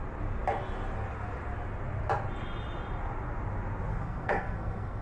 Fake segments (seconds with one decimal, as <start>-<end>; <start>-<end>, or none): 3.9-5.0